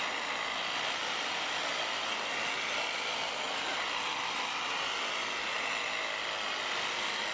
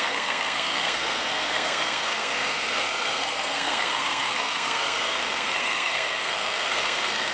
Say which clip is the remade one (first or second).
second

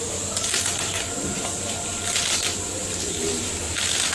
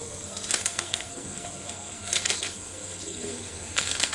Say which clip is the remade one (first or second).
second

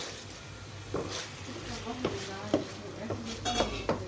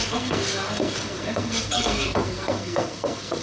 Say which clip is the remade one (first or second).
second